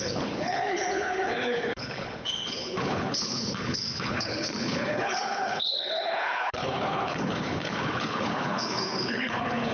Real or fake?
fake